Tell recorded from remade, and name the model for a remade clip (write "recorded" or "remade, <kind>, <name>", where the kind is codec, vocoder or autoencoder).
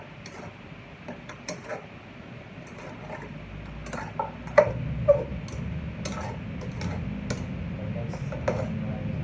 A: recorded